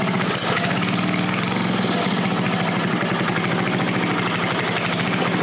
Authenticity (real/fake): real